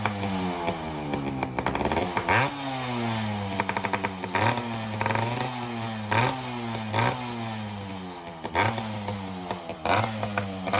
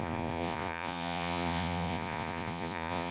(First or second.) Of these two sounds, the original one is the first